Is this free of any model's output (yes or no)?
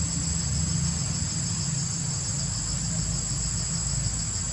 yes